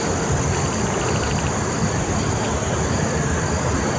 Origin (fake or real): real